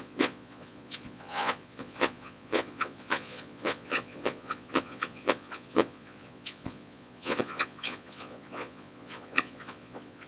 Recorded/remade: remade